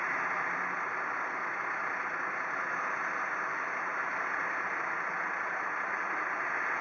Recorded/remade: recorded